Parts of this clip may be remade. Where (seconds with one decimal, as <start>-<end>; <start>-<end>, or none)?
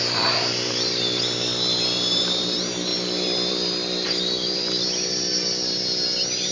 0.5-1.8; 2.9-4.7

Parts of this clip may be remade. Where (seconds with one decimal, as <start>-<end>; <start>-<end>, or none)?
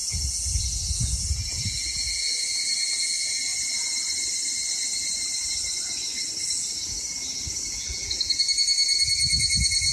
0.0-3.5; 7.7-9.9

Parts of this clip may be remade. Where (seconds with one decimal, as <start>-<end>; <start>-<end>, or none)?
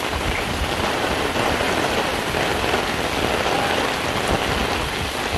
0.0-2.1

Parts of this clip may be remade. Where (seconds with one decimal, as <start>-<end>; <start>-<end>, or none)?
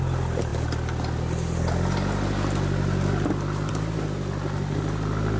none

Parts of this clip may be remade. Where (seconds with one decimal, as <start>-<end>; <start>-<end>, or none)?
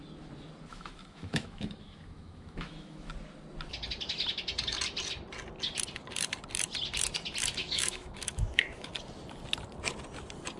0.7-3.1; 7.6-8.9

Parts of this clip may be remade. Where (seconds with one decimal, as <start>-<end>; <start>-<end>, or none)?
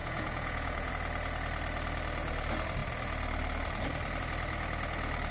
0.0-0.9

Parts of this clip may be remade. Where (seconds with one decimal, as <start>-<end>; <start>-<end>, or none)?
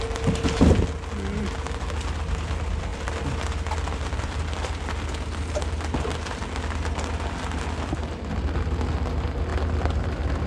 none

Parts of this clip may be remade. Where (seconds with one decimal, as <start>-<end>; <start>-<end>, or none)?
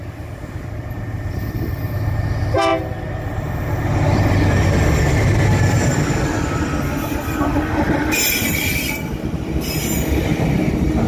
none